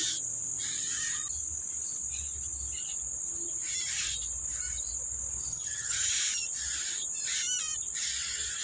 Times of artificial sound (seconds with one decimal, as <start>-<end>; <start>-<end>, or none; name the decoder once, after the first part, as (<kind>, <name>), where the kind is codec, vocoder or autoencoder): 5.5-6.1 (vocoder, HiFi-GAN)

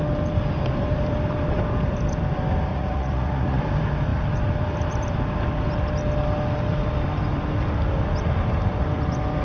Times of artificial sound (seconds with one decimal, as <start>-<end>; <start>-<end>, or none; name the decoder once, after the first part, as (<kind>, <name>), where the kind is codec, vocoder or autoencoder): 2.7-3.6 (vocoder, Vocos)

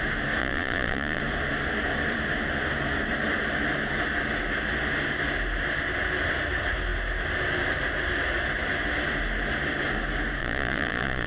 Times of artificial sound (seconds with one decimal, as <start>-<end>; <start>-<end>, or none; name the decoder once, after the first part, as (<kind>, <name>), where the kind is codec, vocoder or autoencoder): 0.4-1.2 (vocoder, Vocos); 10.4-11.3